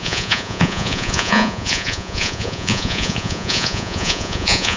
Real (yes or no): no